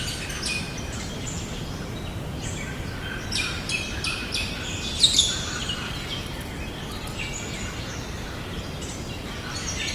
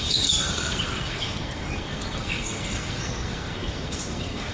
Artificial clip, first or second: second